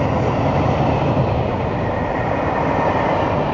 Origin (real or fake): real